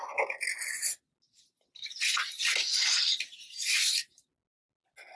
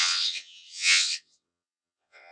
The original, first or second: first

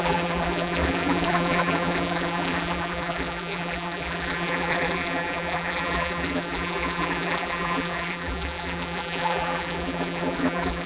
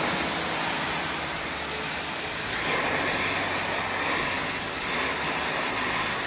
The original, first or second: second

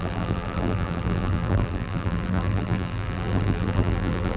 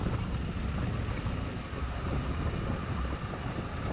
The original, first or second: second